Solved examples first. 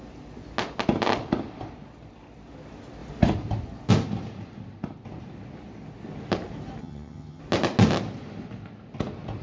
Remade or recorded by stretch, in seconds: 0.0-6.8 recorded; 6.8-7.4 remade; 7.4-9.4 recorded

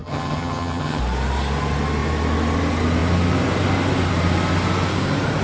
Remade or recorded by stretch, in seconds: 0.0-1.0 remade; 1.0-5.4 recorded

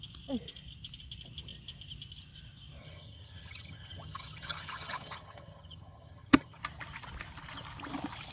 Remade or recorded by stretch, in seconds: 0.0-2.8 recorded; 2.8-6.6 remade; 6.6-8.3 recorded

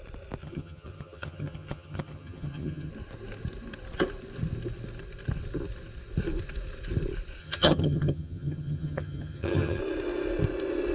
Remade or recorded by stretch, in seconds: 0.0-0.4 recorded; 0.4-2.9 remade; 2.9-7.4 recorded; 7.4-9.8 remade; 9.8-10.9 recorded